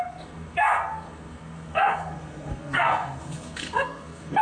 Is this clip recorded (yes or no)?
no